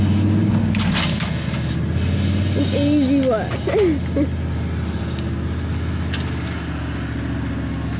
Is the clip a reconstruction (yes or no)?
no